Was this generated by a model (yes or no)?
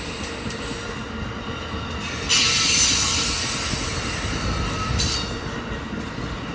no